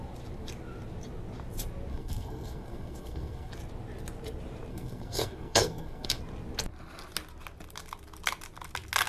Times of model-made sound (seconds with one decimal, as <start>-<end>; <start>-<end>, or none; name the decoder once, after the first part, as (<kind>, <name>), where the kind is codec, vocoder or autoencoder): 1.9-3.5 (codec, SNAC); 4.7-6.2